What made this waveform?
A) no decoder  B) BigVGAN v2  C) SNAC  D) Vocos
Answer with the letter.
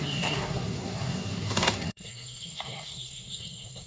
C